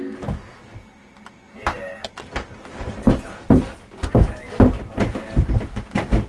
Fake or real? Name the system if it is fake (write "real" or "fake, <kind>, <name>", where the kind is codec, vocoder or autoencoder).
real